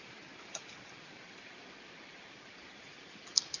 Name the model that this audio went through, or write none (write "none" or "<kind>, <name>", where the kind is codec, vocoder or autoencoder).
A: none